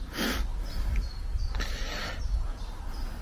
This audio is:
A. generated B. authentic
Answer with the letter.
B